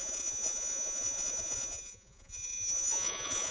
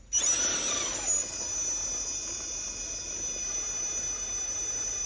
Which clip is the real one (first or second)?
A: second